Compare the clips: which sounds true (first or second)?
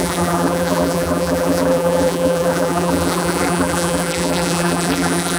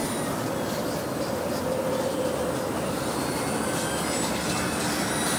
second